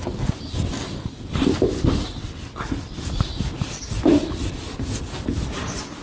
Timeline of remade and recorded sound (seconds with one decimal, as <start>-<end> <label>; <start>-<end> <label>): 0.0-6.0 recorded